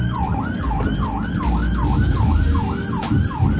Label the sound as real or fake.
real